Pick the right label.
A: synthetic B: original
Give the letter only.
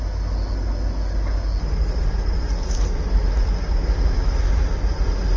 B